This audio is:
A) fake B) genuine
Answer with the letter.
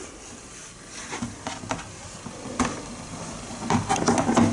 B